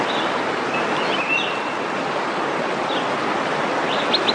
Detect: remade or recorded recorded